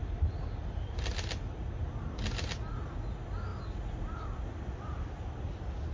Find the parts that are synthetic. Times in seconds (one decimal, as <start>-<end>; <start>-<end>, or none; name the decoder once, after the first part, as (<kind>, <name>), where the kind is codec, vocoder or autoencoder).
none